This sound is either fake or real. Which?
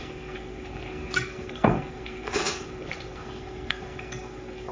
fake